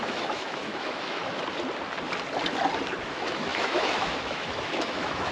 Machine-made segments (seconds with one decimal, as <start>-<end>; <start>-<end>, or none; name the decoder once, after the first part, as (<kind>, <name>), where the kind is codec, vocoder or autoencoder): 0.0-1.2 (autoencoder, DAC-VAE); 3.1-5.3